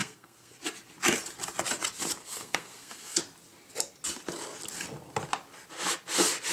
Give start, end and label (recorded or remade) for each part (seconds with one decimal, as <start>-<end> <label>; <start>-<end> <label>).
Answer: 0.0-0.6 remade; 0.6-2.2 recorded; 2.2-3.2 remade; 3.2-6.5 recorded